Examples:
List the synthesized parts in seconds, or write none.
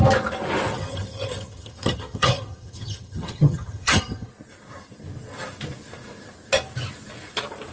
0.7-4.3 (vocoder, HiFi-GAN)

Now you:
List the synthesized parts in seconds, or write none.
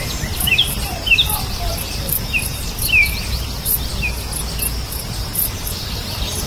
0.0-3.9 (vocoder, BigVGAN v2); 4.9-6.5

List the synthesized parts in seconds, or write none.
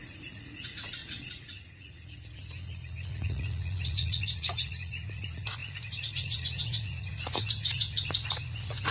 0.0-8.9 (vocoder, Vocos)